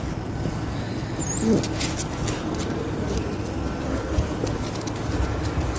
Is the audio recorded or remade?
recorded